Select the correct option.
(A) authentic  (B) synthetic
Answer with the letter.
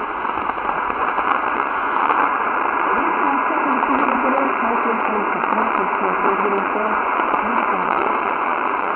B